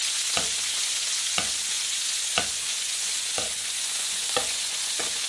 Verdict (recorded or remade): remade